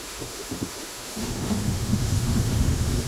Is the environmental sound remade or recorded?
remade